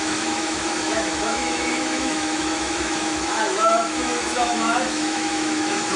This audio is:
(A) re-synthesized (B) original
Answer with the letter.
A